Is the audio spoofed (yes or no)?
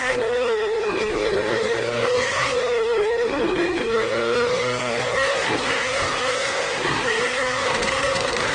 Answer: yes